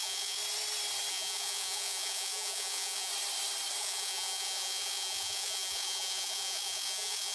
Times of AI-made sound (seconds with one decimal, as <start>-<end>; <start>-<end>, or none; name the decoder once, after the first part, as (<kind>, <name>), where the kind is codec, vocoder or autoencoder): 0.0-0.4 (vocoder, Vocos); 1.1-3.1; 3.8-7.3